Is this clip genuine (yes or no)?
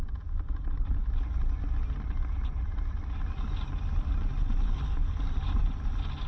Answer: yes